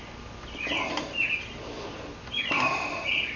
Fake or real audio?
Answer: real